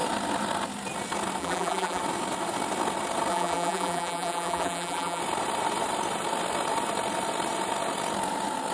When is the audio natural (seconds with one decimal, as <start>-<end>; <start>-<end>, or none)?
0.0-1.4; 2.0-3.3; 5.2-8.7